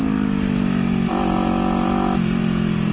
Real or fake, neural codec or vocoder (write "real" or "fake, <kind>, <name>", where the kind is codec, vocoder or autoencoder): real